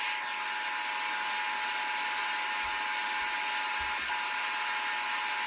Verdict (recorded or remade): recorded